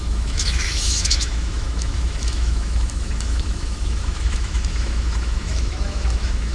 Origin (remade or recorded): remade